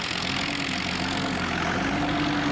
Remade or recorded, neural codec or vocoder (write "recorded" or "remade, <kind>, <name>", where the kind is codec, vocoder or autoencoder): recorded